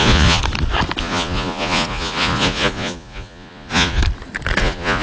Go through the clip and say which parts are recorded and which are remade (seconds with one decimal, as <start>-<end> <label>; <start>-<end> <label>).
0.0-0.4 remade; 0.4-1.0 recorded; 1.0-4.0 remade; 4.0-4.6 recorded; 4.6-5.0 remade